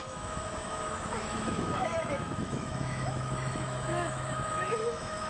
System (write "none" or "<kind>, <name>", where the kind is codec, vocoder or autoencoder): autoencoder, DAC-VAE